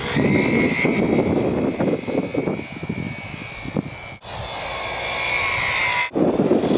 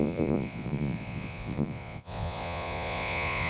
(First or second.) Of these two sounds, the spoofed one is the second